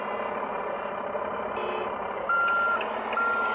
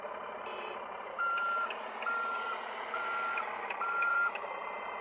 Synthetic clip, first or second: second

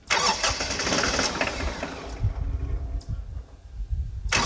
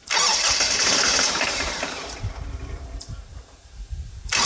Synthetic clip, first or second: second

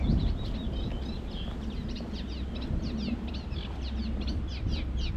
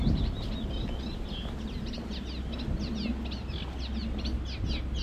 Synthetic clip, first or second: first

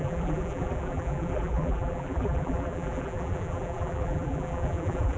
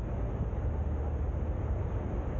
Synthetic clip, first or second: first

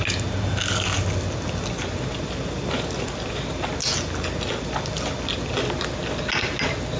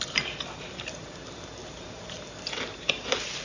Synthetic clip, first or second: second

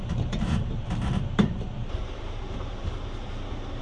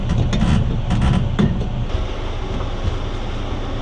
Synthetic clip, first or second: first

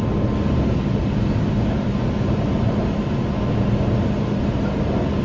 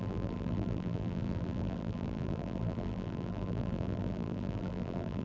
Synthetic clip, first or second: second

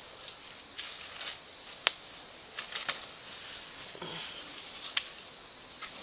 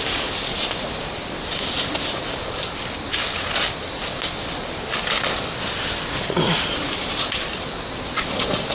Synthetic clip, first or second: second